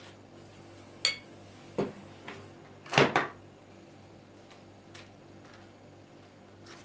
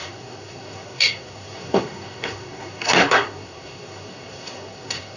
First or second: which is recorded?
first